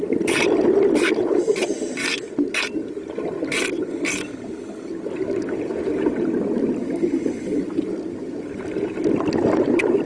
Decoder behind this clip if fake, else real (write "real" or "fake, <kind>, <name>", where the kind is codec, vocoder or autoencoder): real